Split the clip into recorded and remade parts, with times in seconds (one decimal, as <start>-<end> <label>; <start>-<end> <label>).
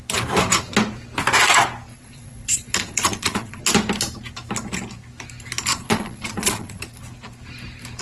0.0-1.9 recorded; 1.9-3.6 remade; 3.6-5.7 recorded; 5.7-6.8 remade; 6.8-8.0 recorded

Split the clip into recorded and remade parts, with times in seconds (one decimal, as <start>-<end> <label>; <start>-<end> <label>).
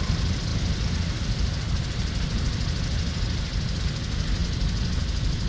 0.0-5.5 recorded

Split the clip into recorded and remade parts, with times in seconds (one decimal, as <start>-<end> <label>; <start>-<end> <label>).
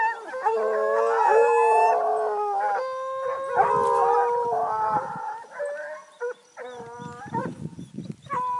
0.0-7.4 recorded; 7.4-8.0 remade; 8.0-8.6 recorded